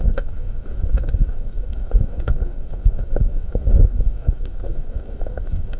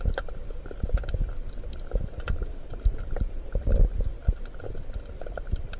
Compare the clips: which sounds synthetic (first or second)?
first